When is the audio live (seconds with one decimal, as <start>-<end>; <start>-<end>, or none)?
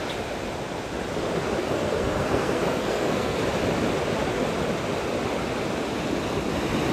0.0-1.6; 3.4-6.9